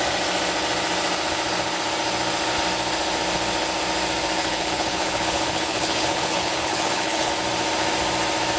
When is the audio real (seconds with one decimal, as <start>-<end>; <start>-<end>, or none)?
0.0-4.4; 7.3-8.6